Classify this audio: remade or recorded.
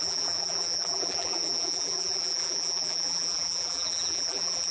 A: remade